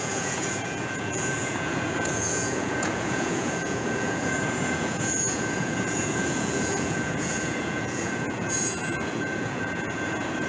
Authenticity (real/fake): fake